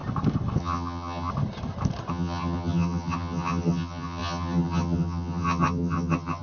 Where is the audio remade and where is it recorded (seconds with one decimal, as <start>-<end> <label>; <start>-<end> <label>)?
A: 0.0-0.6 recorded; 0.6-1.3 remade; 1.3-2.1 recorded; 2.1-6.4 remade